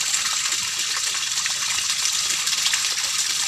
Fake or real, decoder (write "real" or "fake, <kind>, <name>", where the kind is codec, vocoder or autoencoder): real